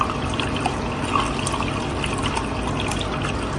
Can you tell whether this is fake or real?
real